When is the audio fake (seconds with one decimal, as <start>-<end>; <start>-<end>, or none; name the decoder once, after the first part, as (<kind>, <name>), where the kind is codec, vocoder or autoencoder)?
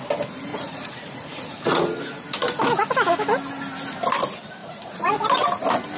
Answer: 0.5-1.8 (vocoder, Vocos); 4.6-5.2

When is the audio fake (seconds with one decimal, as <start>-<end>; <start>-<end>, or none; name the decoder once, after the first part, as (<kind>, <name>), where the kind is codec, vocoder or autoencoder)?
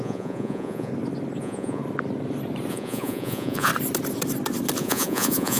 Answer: 0.0-0.9 (vocoder, Vocos); 1.4-1.8; 2.7-3.7; 4.8-5.6